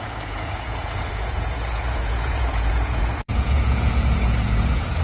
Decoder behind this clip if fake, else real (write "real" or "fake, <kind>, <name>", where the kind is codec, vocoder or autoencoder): fake, vocoder, Vocos